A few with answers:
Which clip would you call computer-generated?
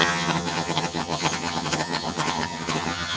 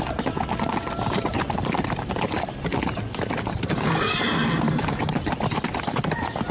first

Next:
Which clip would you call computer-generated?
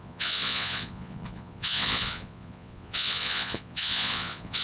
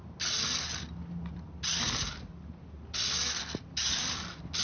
first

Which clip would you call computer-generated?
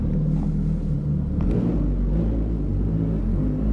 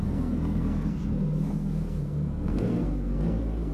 second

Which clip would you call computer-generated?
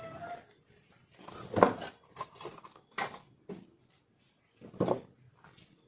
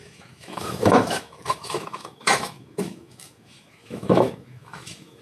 second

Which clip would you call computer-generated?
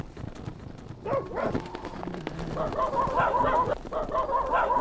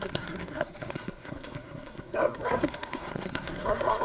second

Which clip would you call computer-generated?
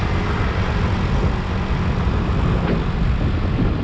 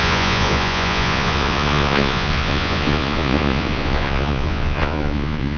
second